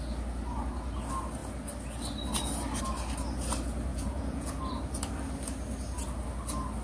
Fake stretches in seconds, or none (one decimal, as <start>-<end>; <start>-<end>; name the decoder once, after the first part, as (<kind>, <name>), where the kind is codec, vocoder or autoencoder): 3.9-4.6 (vocoder, Vocos)

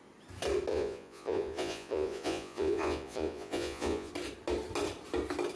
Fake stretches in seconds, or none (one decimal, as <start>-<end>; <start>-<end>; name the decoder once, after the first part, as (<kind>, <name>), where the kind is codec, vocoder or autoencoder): 0.7-4.1 (vocoder, Vocos)

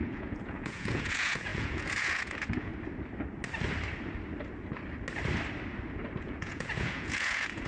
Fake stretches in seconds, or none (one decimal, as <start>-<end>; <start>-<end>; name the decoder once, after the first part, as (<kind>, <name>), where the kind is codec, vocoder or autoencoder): 0.0-2.7 (vocoder, Vocos); 6.2-7.7

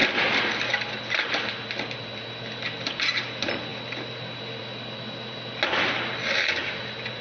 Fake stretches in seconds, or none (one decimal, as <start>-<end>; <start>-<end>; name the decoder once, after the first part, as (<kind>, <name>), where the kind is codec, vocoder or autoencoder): none

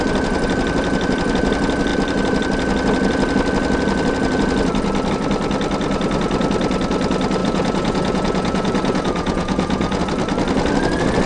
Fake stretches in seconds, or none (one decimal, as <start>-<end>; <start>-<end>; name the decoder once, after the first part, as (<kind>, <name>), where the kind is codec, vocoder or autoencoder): 7.4-10.0 (vocoder, Vocos)